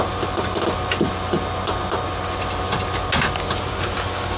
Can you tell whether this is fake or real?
real